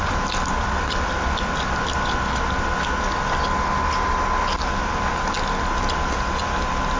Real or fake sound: real